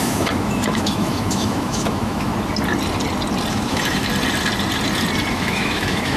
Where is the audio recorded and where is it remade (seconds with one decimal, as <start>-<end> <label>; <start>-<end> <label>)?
0.0-2.3 remade; 2.3-3.5 recorded; 3.5-4.1 remade; 4.1-5.3 recorded; 5.3-6.2 remade